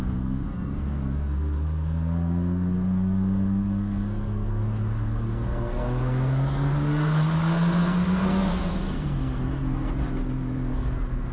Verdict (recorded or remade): remade